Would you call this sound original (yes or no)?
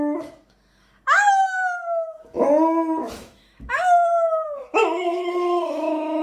no